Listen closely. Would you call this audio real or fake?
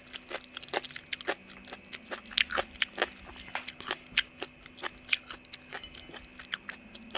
real